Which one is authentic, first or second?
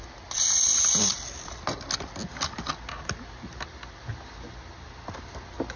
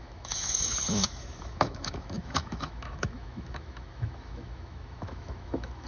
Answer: first